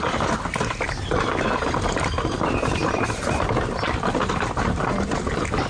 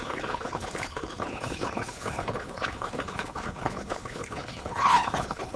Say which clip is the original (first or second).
first